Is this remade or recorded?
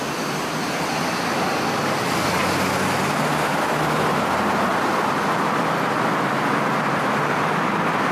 recorded